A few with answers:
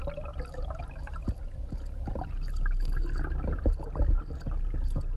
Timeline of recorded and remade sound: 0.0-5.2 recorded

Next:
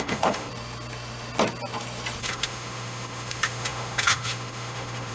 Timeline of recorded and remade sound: 0.0-0.5 remade; 0.5-2.2 recorded; 2.2-5.1 remade

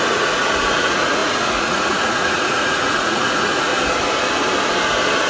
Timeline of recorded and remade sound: 0.0-3.7 remade; 3.7-5.3 recorded